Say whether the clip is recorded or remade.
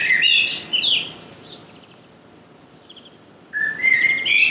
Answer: recorded